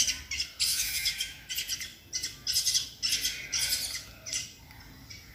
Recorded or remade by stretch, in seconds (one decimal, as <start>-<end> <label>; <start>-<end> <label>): 0.0-0.7 recorded; 0.7-1.5 remade; 1.5-5.3 recorded